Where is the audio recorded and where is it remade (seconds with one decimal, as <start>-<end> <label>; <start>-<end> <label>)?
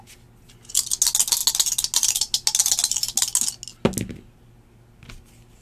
0.0-5.6 recorded